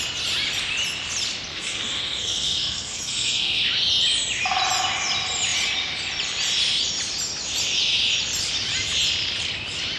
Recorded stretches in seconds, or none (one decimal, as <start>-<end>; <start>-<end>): 0.0-1.5; 3.7-10.0